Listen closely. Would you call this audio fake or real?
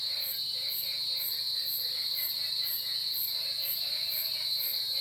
real